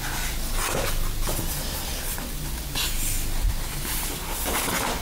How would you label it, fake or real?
real